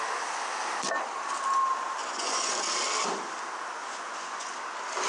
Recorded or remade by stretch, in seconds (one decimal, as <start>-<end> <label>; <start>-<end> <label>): 0.0-2.0 recorded; 2.0-2.5 remade; 2.5-3.8 recorded; 3.8-4.5 remade; 4.5-5.1 recorded